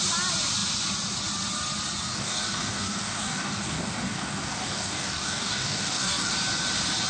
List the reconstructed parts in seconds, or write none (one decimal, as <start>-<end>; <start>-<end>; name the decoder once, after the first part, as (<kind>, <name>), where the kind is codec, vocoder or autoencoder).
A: 2.1-6.3 (codec, DAC)